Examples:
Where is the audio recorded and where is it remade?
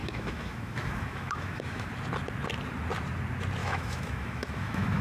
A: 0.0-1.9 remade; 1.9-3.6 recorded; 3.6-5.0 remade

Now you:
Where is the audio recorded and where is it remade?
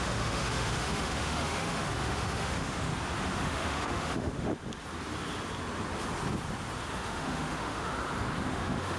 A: 0.0-2.9 remade; 2.9-3.4 recorded; 3.4-4.5 remade; 4.5-6.9 recorded; 6.9-7.9 remade; 7.9-8.5 recorded; 8.5-9.0 remade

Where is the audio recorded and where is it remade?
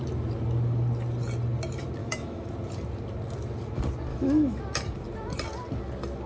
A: 0.0-2.0 recorded; 2.0-2.5 remade; 2.5-4.1 recorded; 4.1-4.6 remade; 4.6-6.3 recorded